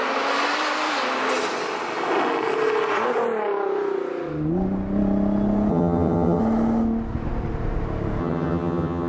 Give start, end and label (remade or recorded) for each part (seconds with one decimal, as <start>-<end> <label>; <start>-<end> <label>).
0.0-5.7 recorded; 5.7-6.4 remade; 6.4-8.2 recorded; 8.2-9.1 remade